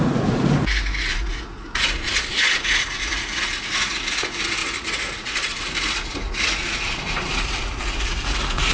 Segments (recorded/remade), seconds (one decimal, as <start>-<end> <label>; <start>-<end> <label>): 0.0-8.7 remade